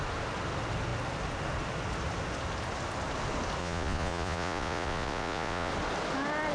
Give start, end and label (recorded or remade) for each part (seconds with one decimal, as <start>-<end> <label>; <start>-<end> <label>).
0.0-3.6 recorded; 3.6-5.7 remade; 5.7-6.5 recorded